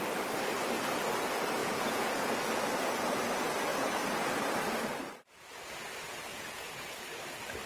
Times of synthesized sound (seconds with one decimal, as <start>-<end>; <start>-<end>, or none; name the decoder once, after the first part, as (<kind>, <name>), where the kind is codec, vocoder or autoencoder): 1.6-2.3 (vocoder, Vocos); 3.7-4.3; 6.3-6.9